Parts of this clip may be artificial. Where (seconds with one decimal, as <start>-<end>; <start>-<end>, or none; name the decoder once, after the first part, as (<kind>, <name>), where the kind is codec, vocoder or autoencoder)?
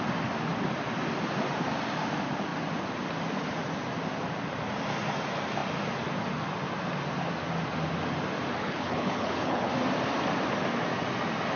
8.6-9.7 (codec, HILCodec)